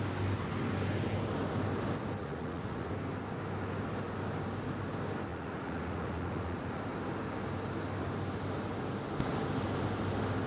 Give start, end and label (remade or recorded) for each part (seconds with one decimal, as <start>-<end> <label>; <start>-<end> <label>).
0.0-2.2 recorded; 2.2-2.9 remade; 2.9-5.3 recorded; 5.3-6.8 remade; 6.8-10.5 recorded